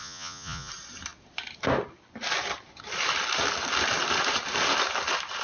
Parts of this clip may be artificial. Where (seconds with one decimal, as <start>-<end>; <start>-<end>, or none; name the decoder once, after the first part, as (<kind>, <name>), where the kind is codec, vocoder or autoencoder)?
0.0-0.7 (vocoder, Vocos)